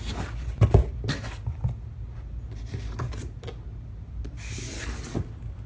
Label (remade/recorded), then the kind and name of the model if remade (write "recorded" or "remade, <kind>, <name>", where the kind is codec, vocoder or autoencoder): recorded